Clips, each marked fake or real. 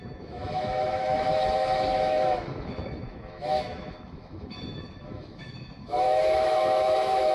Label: fake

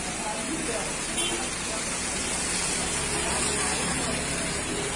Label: real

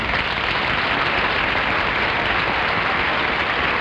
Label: real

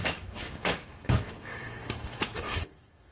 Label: fake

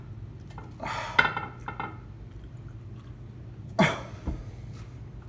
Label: real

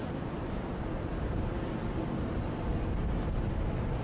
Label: real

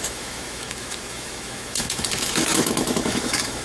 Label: fake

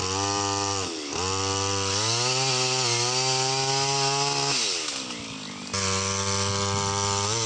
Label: real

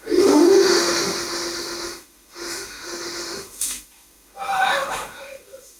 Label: fake